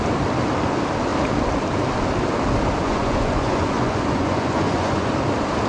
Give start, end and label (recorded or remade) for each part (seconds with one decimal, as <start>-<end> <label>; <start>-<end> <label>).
0.0-2.8 recorded; 2.8-5.1 remade; 5.1-5.7 recorded